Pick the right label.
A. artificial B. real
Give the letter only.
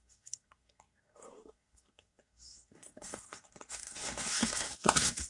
A